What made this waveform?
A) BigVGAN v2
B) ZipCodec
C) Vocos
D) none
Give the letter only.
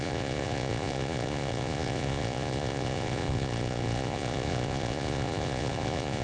C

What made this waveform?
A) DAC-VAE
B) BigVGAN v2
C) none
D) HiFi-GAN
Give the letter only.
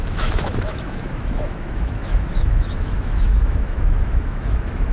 A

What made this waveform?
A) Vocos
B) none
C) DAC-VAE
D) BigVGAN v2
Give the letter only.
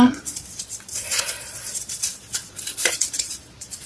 A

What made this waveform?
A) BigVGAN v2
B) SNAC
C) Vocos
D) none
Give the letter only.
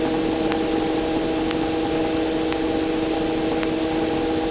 D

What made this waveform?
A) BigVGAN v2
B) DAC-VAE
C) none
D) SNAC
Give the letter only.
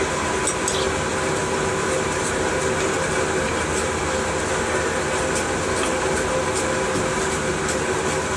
C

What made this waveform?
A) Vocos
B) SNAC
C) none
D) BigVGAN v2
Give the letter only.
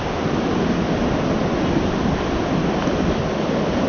C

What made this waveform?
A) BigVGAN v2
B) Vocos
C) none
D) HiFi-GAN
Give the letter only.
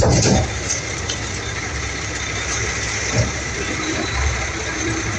A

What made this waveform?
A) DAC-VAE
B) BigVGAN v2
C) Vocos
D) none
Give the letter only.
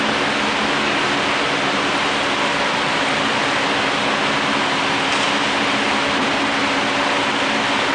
D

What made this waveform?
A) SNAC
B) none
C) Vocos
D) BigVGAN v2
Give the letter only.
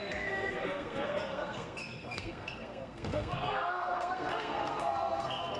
A